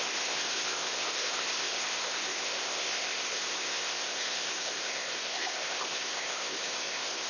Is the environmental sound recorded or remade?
remade